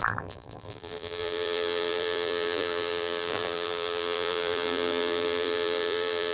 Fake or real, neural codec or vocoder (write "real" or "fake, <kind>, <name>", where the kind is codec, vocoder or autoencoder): fake, vocoder, BigVGAN v2